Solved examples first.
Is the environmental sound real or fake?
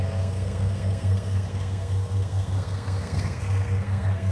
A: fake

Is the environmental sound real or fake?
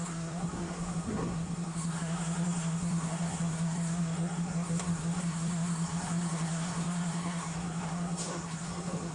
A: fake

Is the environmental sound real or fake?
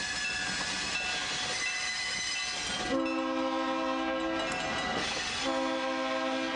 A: real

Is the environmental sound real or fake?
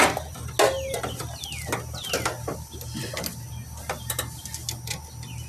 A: real